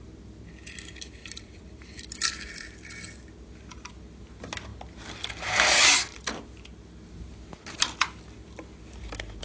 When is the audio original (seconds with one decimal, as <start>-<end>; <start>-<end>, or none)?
0.0-1.2; 2.1-9.4